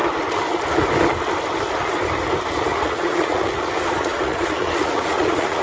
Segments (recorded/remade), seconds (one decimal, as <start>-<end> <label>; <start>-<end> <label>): 0.0-2.7 recorded; 2.7-5.6 remade